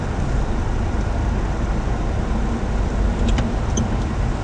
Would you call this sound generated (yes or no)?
no